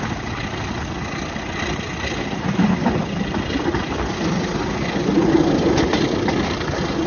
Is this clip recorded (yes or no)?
yes